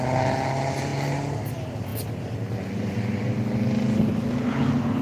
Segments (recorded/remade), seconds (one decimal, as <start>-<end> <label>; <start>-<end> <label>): 0.0-5.0 recorded